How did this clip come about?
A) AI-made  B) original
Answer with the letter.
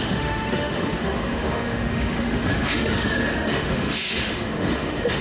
A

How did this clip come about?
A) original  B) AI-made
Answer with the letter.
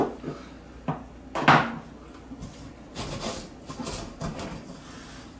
A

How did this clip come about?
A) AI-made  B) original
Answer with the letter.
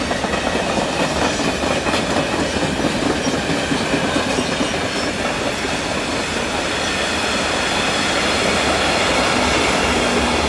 B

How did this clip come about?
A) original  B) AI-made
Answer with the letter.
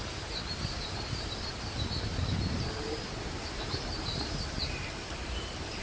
B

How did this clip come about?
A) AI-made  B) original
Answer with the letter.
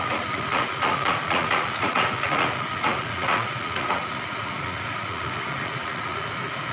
A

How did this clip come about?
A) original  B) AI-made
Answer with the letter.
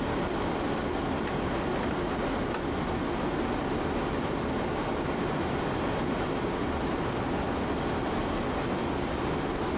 A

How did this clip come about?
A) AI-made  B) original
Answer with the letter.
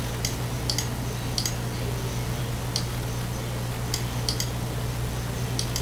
B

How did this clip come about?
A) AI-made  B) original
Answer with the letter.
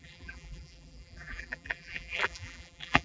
A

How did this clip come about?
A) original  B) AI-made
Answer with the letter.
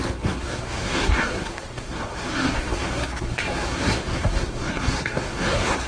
B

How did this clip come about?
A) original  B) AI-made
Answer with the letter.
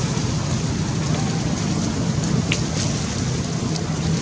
A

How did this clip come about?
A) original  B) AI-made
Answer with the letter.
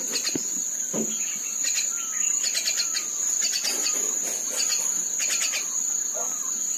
A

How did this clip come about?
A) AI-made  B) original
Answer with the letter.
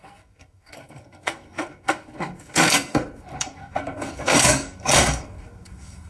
A